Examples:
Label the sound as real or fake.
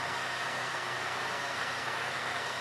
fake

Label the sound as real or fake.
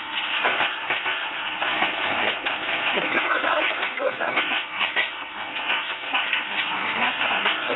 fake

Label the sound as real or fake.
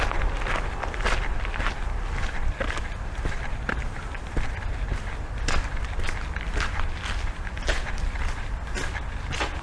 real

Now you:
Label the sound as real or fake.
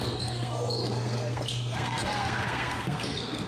fake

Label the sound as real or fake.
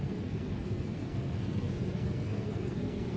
fake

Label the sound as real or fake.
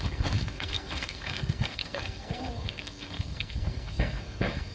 fake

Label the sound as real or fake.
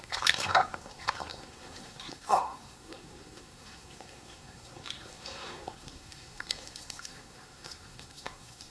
fake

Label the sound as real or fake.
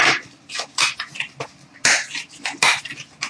real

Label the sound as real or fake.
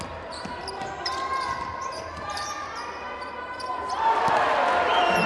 real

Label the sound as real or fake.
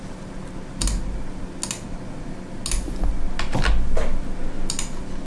real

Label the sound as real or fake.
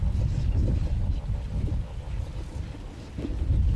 real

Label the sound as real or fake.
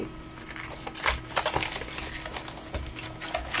real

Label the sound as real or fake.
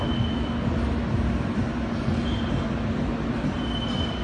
real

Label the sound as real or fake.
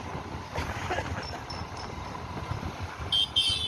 real